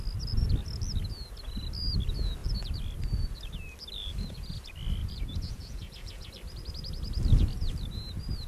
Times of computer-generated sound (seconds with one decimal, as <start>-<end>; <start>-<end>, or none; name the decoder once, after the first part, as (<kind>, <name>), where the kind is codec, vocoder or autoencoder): 5.0-6.3 (vocoder, Vocos)

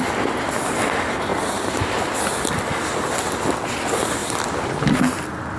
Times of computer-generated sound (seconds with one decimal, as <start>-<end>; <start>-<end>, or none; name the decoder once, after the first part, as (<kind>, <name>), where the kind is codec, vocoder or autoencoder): none